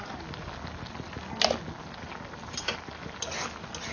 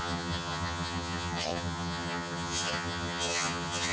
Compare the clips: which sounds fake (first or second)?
second